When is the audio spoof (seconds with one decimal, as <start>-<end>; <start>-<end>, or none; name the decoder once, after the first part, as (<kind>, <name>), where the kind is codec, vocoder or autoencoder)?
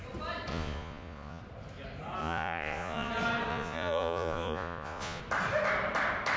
0.5-1.4 (vocoder, Vocos); 2.2-3.1; 3.5-5.2